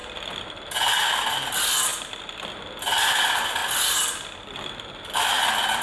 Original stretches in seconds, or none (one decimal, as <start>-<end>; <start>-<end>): 0.0-5.8